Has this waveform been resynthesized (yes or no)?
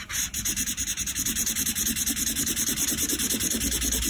no